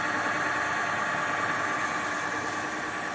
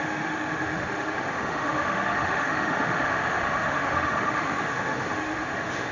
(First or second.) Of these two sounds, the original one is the first